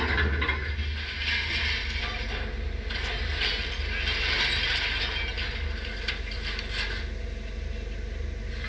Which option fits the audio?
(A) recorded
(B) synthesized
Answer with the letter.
A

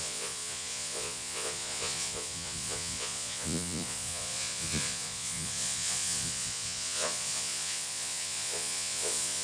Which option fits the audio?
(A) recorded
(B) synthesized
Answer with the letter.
B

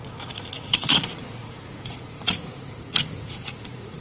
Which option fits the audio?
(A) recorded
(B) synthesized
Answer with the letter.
B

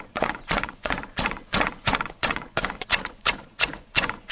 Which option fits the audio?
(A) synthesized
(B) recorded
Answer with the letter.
A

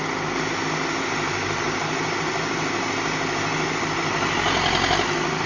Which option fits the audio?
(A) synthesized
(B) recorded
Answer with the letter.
B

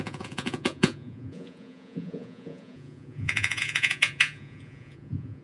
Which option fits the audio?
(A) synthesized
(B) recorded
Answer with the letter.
A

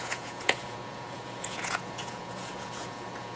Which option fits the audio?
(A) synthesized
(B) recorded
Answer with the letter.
A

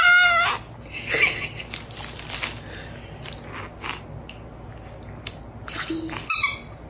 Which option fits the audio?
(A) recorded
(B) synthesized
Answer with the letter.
A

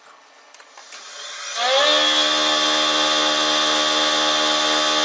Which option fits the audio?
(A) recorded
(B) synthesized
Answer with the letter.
A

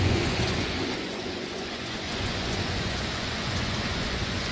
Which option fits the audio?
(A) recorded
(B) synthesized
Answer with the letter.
B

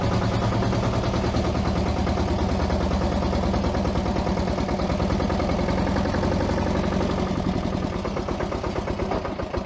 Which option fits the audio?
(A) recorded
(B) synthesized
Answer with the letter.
A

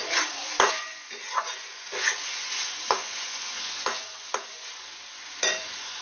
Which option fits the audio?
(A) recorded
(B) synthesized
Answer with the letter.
B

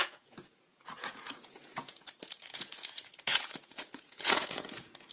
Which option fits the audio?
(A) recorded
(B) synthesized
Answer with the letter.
B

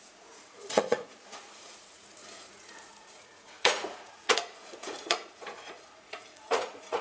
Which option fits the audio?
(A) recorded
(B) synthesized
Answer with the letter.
B